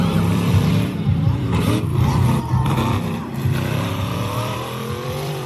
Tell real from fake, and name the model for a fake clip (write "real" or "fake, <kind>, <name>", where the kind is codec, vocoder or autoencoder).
fake, vocoder, BigVGAN v2